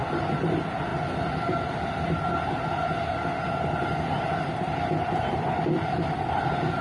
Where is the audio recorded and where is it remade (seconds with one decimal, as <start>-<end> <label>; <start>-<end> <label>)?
0.0-6.8 recorded